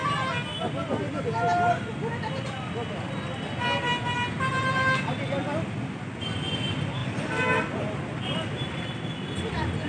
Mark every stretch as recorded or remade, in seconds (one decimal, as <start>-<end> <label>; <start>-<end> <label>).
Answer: 0.0-9.9 recorded